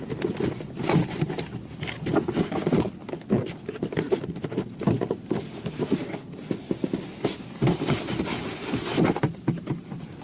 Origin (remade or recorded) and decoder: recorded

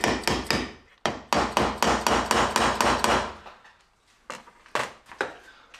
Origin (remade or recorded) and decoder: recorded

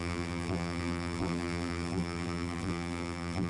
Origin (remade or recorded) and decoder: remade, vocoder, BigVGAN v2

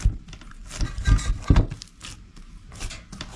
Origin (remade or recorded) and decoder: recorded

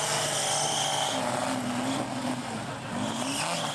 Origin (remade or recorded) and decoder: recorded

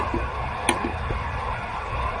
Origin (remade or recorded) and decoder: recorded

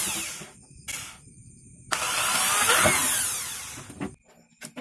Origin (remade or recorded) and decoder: recorded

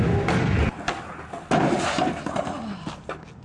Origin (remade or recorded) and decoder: recorded